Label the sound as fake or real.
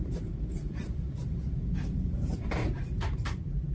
fake